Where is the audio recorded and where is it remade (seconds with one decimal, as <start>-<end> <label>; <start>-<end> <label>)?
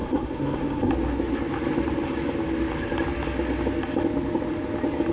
0.0-0.9 remade; 0.9-5.1 recorded